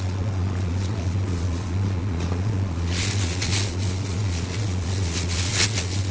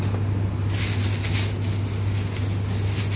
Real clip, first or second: second